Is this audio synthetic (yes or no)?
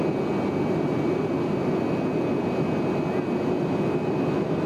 no